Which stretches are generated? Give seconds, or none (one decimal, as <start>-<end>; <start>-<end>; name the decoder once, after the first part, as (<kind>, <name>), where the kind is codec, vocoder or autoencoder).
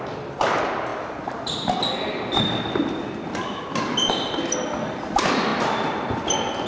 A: none